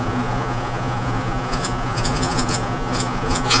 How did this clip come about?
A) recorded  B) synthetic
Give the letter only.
B